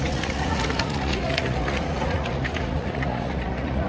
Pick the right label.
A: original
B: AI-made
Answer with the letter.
B